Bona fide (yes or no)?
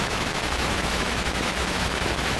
no